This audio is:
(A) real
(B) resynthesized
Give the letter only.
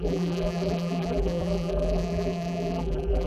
B